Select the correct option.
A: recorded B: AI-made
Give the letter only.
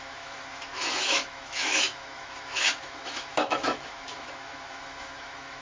B